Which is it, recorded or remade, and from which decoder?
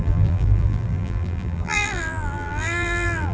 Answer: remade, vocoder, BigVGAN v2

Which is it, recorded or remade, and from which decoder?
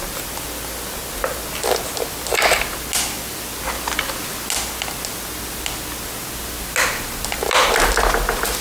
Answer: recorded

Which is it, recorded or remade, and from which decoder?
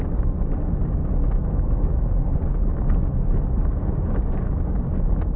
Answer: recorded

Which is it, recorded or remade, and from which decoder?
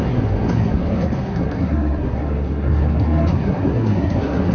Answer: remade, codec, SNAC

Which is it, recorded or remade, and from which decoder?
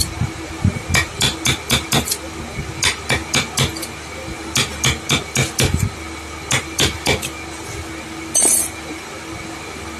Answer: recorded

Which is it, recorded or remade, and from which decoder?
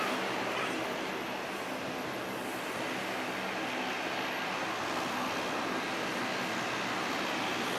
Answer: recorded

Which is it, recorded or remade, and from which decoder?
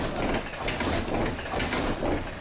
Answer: recorded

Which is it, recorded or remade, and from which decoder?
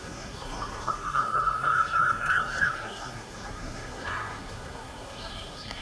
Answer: remade, codec, SNAC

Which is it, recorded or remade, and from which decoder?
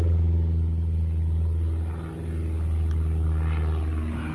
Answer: recorded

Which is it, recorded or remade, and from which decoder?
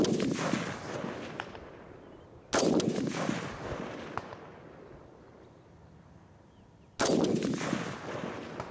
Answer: recorded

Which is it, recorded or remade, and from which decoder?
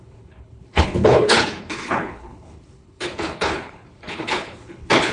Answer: remade, codec, HILCodec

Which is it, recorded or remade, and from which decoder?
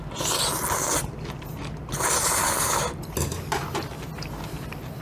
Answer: recorded